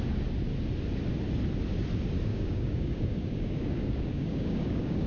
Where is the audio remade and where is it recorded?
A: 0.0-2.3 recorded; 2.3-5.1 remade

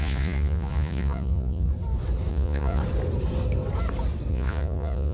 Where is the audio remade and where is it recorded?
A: 0.0-1.7 remade; 1.7-2.3 recorded; 2.3-2.8 remade; 2.8-4.3 recorded; 4.3-5.1 remade

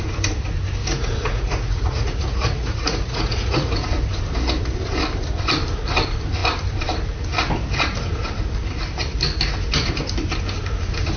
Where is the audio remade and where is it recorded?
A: 0.0-0.8 recorded; 0.8-3.7 remade; 3.7-11.2 recorded

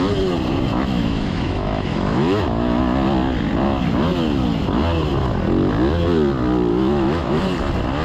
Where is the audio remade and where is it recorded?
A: 0.0-0.7 recorded; 0.7-2.8 remade; 2.8-6.7 recorded; 6.7-7.4 remade; 7.4-8.0 recorded

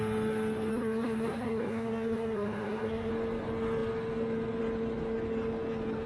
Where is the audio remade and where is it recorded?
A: 0.0-0.7 recorded; 0.7-3.1 remade; 3.1-6.1 recorded

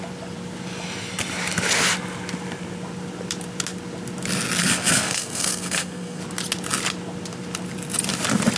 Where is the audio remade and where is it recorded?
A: 0.0-4.6 recorded; 4.6-6.2 remade; 6.2-8.6 recorded